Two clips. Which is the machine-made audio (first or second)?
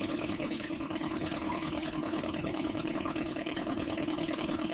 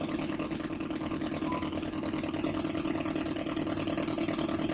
first